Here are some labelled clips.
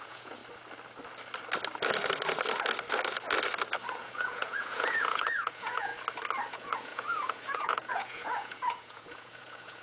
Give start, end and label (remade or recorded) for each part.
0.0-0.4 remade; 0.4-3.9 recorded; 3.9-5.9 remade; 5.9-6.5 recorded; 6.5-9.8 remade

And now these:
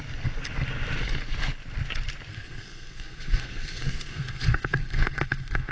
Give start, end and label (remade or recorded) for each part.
0.0-2.3 recorded; 2.3-5.7 remade

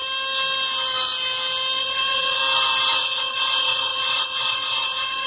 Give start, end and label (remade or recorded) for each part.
0.0-1.8 recorded; 1.8-2.4 remade; 2.4-3.0 recorded; 3.0-5.3 remade

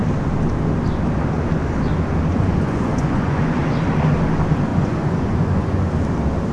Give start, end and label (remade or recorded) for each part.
0.0-2.3 recorded; 2.3-3.6 remade; 3.6-4.7 recorded; 4.7-5.9 remade; 5.9-6.5 recorded

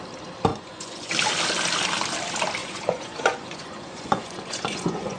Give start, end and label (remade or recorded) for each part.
0.0-0.5 recorded; 0.5-1.1 remade; 1.1-2.6 recorded; 2.6-5.2 remade